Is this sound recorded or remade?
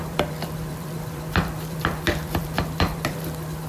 remade